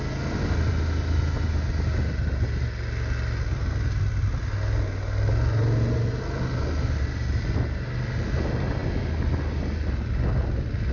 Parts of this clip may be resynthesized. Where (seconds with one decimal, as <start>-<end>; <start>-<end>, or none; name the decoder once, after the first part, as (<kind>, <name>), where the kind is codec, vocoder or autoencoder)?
none